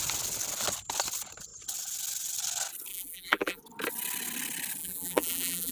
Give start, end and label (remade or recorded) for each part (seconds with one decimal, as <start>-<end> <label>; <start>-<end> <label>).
0.0-2.9 recorded; 2.9-3.6 remade; 3.6-4.8 recorded; 4.8-5.7 remade